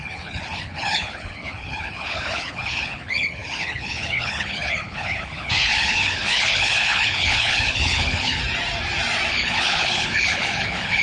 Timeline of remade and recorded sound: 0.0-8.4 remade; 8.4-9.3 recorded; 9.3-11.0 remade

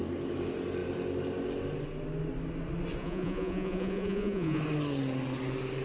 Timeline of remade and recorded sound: 0.0-3.0 recorded; 3.0-4.6 remade; 4.6-5.8 recorded

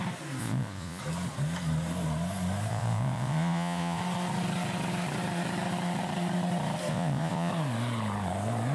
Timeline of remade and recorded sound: 0.0-0.4 recorded; 0.4-1.0 remade; 1.0-2.7 recorded; 2.7-4.0 remade; 4.0-6.9 recorded; 6.9-7.5 remade; 7.5-8.7 recorded

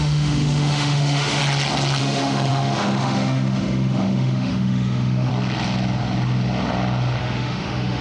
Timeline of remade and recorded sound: 0.0-1.4 remade; 1.4-2.0 recorded; 2.0-5.3 remade; 5.3-7.2 recorded; 7.2-8.0 remade

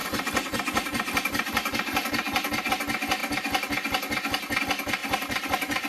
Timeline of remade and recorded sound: 0.0-2.7 remade; 2.7-5.0 recorded; 5.0-5.9 remade

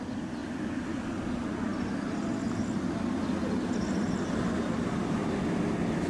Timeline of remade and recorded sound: 0.0-6.1 recorded

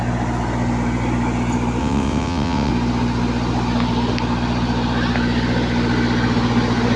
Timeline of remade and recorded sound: 0.0-1.8 recorded; 1.8-2.7 remade; 2.7-7.0 recorded